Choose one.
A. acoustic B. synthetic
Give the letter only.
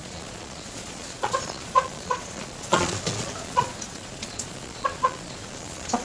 B